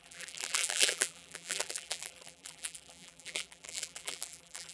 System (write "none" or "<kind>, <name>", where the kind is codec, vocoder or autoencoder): vocoder, BigVGAN v2